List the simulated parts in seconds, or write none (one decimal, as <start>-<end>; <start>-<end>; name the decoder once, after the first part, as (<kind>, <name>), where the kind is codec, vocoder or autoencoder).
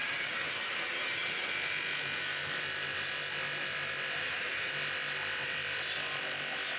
0.0-1.5 (vocoder, HiFi-GAN); 4.2-4.7